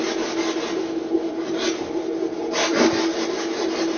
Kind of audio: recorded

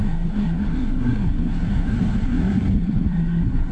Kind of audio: remade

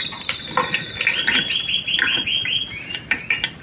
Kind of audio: recorded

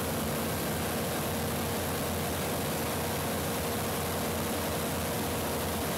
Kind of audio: recorded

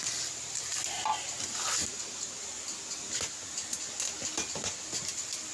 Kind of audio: recorded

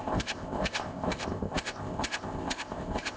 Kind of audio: remade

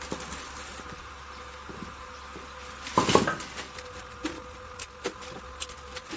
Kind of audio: recorded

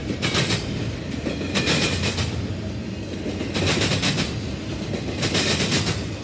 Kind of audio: recorded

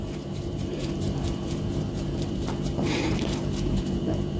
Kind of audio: remade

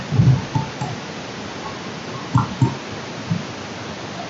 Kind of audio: recorded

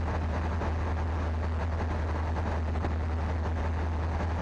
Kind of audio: recorded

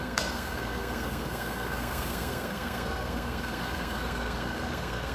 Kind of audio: remade